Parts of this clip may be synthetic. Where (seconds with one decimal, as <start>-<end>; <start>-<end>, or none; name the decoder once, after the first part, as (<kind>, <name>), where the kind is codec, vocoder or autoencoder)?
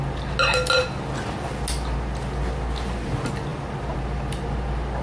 3.5-4.0 (vocoder, BigVGAN v2)